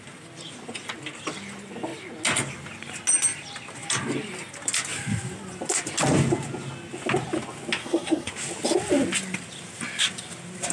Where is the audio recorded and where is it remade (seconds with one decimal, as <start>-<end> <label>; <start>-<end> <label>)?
0.0-7.8 recorded; 7.8-8.3 remade; 8.3-10.7 recorded